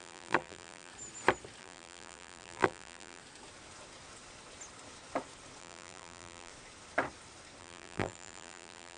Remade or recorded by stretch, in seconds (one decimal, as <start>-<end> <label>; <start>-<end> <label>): 0.0-0.9 remade; 0.9-1.6 recorded; 1.6-3.2 remade; 3.2-5.6 recorded; 5.6-6.5 remade; 6.5-7.6 recorded; 7.6-9.0 remade